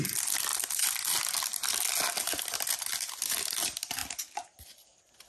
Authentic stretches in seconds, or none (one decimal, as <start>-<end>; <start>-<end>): 0.0-5.3